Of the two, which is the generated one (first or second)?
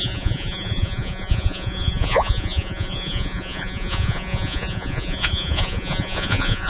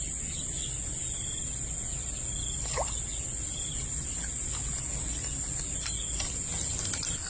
first